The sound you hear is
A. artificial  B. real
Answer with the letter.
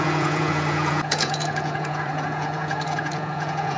A